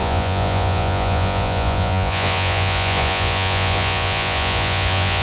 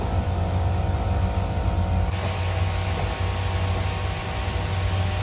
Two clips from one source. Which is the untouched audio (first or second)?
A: second